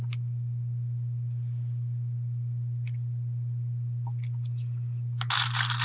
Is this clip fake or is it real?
real